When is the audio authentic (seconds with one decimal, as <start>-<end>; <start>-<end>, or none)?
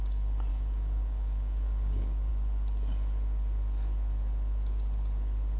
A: 0.0-0.5; 2.3-5.6